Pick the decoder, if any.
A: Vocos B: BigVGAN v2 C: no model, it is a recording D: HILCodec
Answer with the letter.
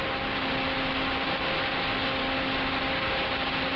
C